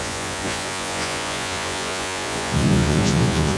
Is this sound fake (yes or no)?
yes